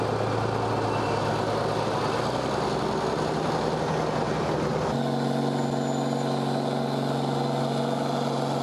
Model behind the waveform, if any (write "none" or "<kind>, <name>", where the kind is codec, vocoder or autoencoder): none